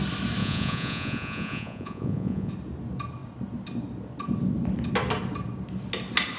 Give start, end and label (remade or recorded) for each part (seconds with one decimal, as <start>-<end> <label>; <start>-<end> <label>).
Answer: 0.0-0.4 recorded; 0.4-2.5 remade; 2.5-6.4 recorded

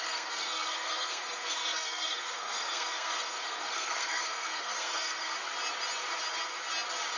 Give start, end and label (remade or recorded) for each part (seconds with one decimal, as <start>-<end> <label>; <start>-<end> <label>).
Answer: 0.0-5.3 remade; 5.3-7.2 recorded

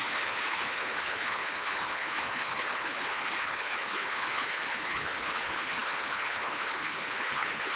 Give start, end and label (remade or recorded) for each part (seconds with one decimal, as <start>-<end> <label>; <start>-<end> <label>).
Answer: 0.0-7.8 remade

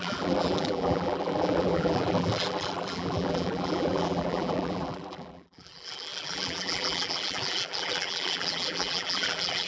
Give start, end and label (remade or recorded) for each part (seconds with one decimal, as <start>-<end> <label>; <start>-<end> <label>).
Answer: 0.0-9.7 remade

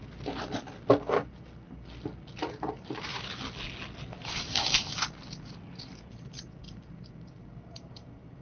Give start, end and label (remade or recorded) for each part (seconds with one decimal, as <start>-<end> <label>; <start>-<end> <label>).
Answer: 0.0-2.5 recorded; 2.5-3.1 remade; 3.1-4.0 recorded; 4.0-8.4 remade

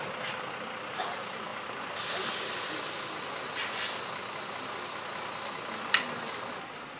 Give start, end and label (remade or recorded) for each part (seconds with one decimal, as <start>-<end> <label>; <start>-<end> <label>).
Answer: 0.0-7.0 recorded